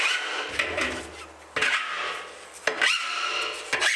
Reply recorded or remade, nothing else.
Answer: recorded